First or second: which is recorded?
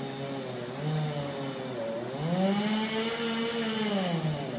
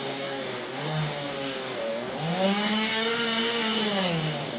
first